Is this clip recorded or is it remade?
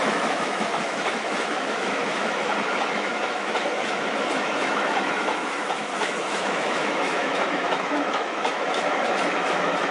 remade